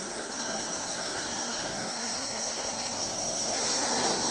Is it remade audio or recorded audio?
remade